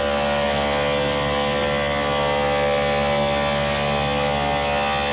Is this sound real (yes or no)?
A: yes